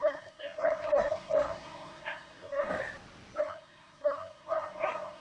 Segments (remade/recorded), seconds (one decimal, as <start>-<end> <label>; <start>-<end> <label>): 0.0-2.7 remade; 2.7-3.4 recorded; 3.4-5.2 remade